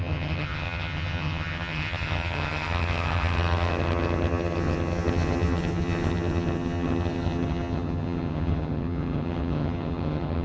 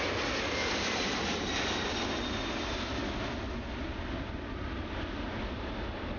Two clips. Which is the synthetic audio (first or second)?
first